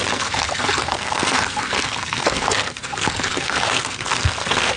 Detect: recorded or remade remade